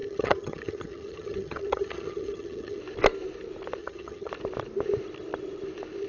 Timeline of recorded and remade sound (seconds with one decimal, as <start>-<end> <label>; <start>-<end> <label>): 0.0-2.8 remade; 2.8-3.8 recorded; 3.8-4.3 remade; 4.3-6.1 recorded